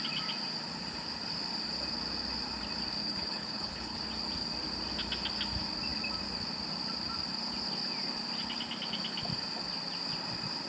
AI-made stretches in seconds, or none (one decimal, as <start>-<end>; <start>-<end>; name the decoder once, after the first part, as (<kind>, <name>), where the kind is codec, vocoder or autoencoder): 3.0-4.0 (codec, HILCodec)